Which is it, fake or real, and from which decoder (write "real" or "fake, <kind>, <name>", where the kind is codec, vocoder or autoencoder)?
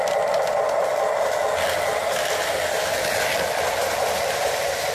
real